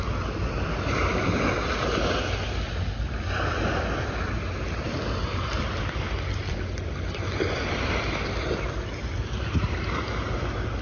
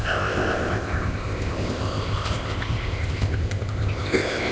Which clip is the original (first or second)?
first